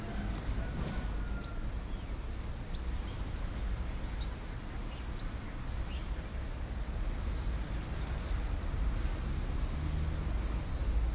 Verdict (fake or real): real